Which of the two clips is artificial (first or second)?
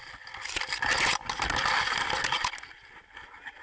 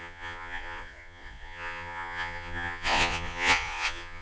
second